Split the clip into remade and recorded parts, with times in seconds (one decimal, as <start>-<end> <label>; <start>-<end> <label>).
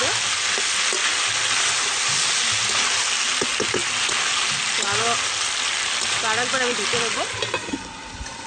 0.0-8.5 recorded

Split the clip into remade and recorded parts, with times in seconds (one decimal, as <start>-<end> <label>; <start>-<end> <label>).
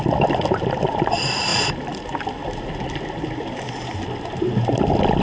0.0-5.2 recorded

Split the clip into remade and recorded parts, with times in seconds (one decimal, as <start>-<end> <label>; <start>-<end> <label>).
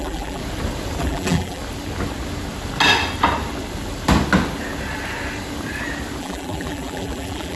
0.0-0.4 remade; 0.4-1.0 recorded; 1.0-1.6 remade; 1.6-6.2 recorded; 6.2-7.6 remade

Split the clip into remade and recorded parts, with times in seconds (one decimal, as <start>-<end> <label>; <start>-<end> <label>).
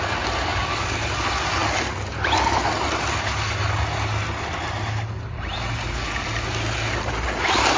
0.0-7.8 recorded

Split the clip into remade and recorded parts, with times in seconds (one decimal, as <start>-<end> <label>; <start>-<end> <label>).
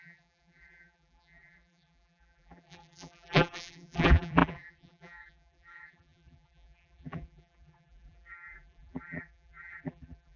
0.0-10.4 remade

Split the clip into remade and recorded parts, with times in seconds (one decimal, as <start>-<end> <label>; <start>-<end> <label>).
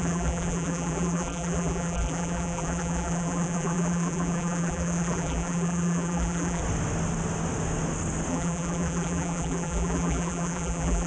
0.0-6.6 remade; 6.6-8.3 recorded; 8.3-11.1 remade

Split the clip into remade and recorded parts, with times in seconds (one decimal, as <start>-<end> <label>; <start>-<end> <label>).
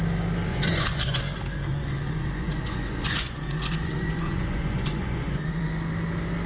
0.0-0.5 recorded; 0.5-1.2 remade; 1.2-1.7 recorded; 1.7-5.6 remade; 5.6-6.5 recorded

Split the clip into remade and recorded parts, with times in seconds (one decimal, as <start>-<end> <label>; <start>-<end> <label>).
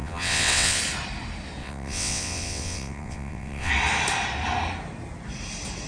0.0-0.8 remade; 0.8-1.6 recorded; 1.6-3.7 remade; 3.7-5.9 recorded